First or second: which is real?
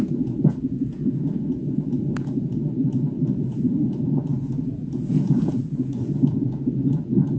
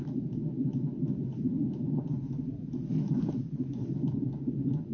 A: second